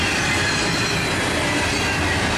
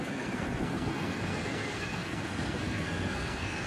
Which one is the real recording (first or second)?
first